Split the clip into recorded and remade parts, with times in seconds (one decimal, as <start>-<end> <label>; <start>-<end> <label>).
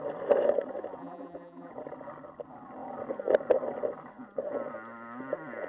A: 0.0-1.0 recorded; 1.0-1.7 remade; 1.7-5.7 recorded